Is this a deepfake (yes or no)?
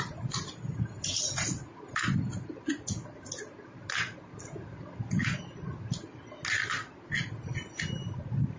no